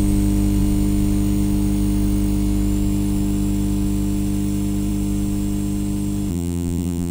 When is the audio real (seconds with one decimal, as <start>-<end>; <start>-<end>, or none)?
0.0-6.3